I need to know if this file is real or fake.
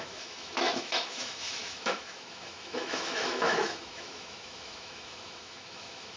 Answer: fake